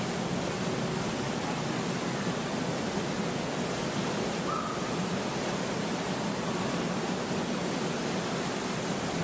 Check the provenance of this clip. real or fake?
real